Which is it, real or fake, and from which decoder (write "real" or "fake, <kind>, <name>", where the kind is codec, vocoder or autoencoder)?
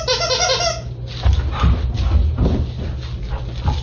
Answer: real